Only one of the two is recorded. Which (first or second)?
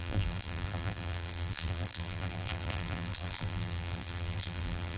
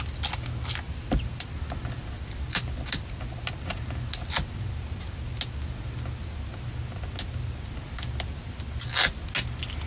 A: second